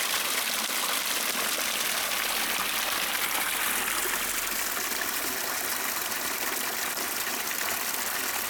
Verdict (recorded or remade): recorded